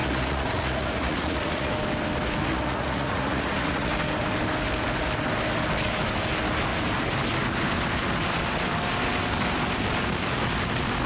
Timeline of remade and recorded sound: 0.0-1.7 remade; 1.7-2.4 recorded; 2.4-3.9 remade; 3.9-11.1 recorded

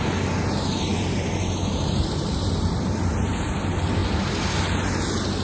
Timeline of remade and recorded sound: 0.0-0.9 recorded; 0.9-3.1 remade; 3.1-5.4 recorded

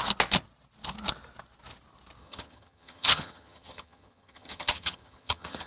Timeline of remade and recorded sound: 0.0-2.2 recorded; 2.2-5.7 remade

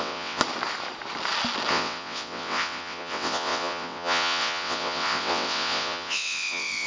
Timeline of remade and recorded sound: 0.0-0.4 remade; 0.4-1.7 recorded; 1.7-6.9 remade

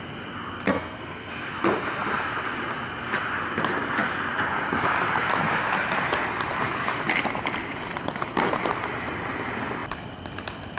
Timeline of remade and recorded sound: 0.0-0.7 recorded; 0.7-1.3 remade; 1.3-10.8 recorded

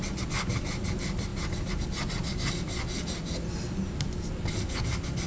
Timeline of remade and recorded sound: 0.0-5.3 recorded

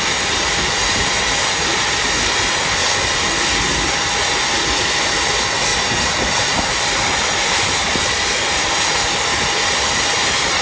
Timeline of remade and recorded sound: 0.0-5.7 recorded; 5.7-9.0 remade; 9.0-10.6 recorded

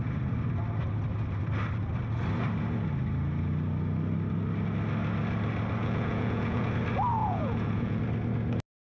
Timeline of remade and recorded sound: 0.0-5.8 recorded; 5.8-6.7 remade; 6.7-7.2 recorded; 7.2-8.0 remade; 8.0-8.9 recorded